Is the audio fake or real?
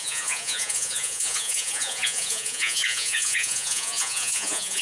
fake